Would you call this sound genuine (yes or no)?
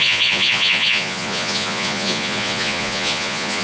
no